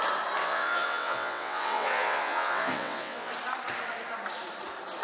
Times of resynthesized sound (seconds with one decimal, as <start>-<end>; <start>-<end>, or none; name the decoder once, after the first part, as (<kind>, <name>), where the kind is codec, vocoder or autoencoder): 0.4-3.3 (vocoder, WaveNeXt)